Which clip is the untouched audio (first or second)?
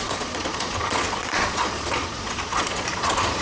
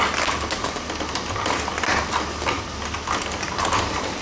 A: second